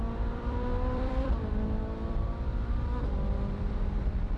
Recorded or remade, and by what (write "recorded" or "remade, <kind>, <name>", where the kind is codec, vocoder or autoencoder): remade, vocoder, BigVGAN v2